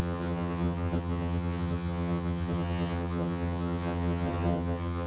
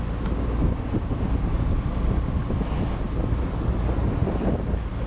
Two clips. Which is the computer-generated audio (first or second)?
first